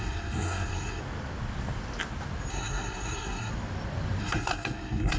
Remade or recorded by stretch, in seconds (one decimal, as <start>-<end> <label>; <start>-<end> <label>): 0.0-1.0 remade; 1.0-2.5 recorded; 2.5-3.5 remade; 3.5-4.2 recorded; 4.2-5.2 remade